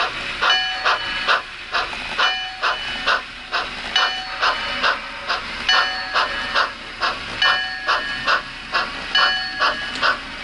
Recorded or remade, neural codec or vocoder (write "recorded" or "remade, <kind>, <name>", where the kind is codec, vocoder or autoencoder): recorded